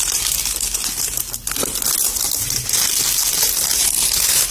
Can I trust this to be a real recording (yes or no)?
yes